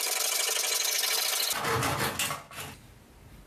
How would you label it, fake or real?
real